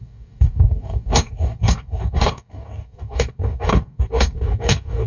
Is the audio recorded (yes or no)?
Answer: no